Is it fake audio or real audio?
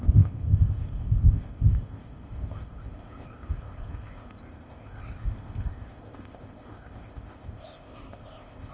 fake